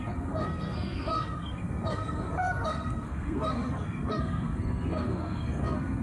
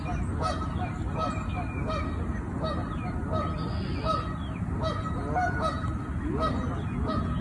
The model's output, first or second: first